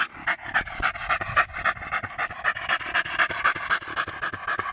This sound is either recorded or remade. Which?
recorded